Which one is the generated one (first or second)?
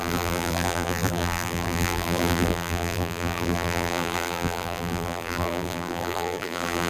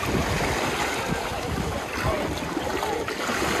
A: first